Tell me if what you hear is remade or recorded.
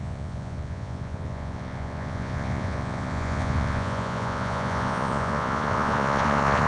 remade